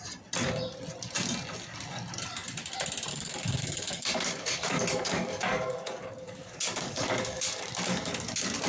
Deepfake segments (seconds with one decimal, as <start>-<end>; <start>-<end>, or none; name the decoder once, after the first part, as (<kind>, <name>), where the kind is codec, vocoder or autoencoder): 3.1-8.1 (codec, DAC)